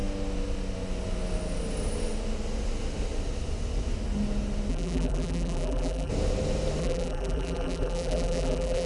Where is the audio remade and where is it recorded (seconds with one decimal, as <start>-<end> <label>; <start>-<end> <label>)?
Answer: 0.0-4.7 recorded; 4.7-6.1 remade; 6.1-6.8 recorded; 6.8-8.9 remade